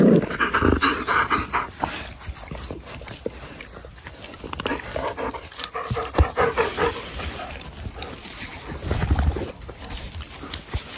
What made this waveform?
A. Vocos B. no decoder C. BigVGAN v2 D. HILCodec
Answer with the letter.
B